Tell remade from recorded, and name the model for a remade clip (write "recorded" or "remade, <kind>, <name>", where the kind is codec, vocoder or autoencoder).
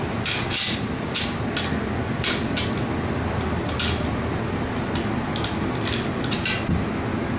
recorded